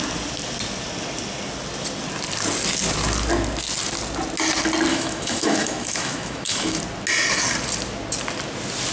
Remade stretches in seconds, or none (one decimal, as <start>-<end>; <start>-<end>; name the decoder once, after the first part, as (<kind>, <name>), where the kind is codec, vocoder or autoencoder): 4.9-6.8 (autoencoder, DAC-VAE)